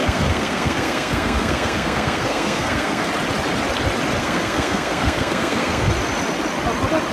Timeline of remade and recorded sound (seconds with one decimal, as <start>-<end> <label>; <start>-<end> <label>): 0.0-3.1 remade; 3.1-4.2 recorded; 4.2-5.9 remade; 5.9-7.1 recorded